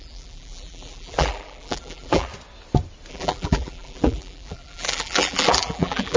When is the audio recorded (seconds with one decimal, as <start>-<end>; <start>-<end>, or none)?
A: 2.3-3.1